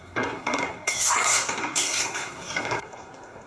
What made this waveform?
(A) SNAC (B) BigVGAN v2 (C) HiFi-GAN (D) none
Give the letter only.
A